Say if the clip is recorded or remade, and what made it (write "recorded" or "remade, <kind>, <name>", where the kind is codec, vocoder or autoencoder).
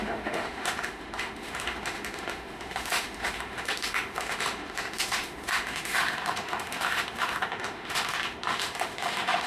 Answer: remade, autoencoder, DAC-VAE